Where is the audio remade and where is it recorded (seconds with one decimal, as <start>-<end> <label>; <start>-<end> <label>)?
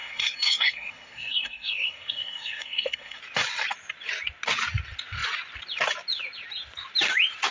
0.0-3.2 remade; 3.2-7.5 recorded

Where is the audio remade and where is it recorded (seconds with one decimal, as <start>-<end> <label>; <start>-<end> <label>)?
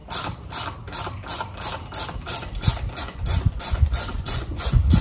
0.0-3.0 recorded; 3.0-5.0 remade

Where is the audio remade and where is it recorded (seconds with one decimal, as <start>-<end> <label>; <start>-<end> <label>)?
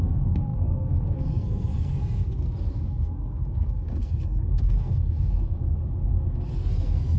0.0-5.8 remade; 5.8-6.5 recorded; 6.5-7.2 remade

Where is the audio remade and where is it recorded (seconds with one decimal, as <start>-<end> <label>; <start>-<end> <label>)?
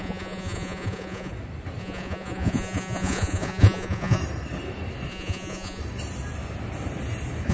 0.0-1.3 remade; 1.3-1.8 recorded; 1.8-4.2 remade; 4.2-5.1 recorded; 5.1-5.8 remade; 5.8-7.5 recorded